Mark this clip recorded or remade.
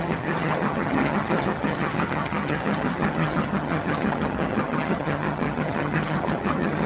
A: remade